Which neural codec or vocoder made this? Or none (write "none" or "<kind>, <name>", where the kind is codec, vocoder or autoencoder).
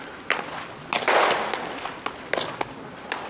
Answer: none